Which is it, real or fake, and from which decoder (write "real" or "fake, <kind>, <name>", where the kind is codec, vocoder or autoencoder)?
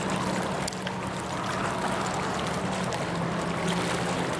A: real